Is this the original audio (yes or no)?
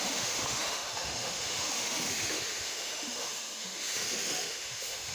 no